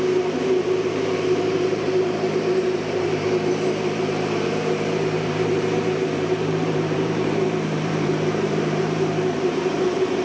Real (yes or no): no